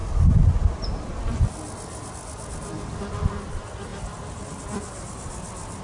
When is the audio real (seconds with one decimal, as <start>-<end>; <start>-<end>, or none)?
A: 0.0-5.8